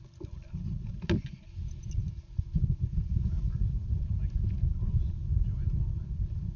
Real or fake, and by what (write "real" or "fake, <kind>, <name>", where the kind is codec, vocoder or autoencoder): real